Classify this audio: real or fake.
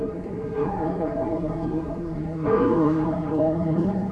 fake